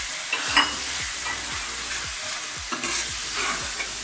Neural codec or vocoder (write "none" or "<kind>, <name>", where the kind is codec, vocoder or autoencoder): none